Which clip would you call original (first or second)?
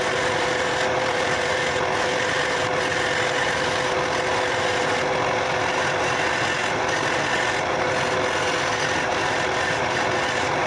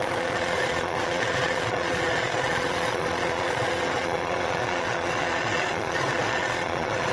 first